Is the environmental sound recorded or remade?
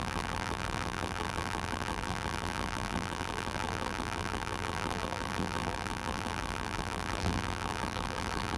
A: remade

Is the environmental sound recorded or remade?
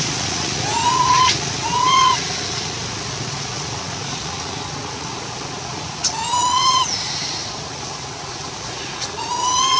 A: remade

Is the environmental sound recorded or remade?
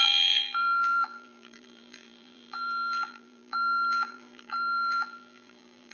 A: remade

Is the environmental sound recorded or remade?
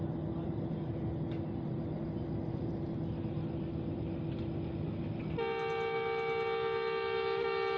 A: recorded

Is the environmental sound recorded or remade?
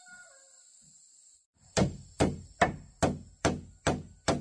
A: recorded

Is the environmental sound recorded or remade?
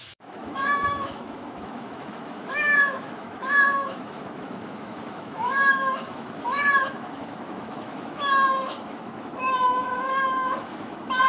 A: remade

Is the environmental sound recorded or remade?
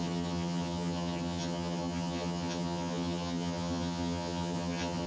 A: remade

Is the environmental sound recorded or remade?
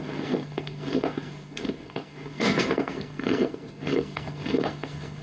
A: remade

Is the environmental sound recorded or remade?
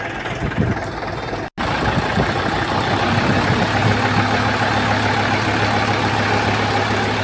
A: recorded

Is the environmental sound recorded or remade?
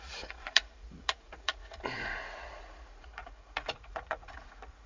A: remade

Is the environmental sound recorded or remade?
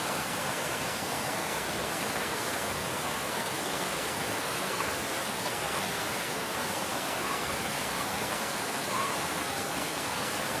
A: remade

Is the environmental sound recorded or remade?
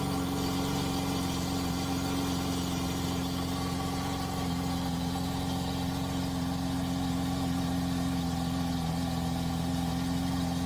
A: recorded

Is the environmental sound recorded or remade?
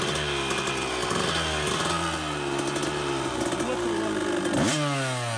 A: recorded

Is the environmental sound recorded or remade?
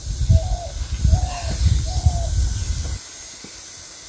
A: recorded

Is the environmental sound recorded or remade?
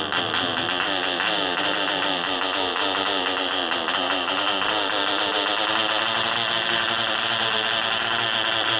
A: remade